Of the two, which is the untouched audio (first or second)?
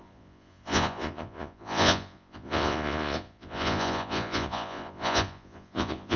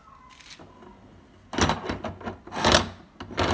second